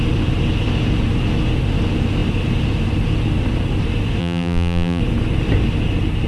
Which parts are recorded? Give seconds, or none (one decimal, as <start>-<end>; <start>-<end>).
0.0-4.2; 5.0-6.3